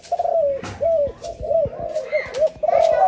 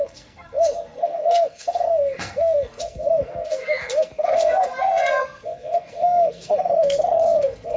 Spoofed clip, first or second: second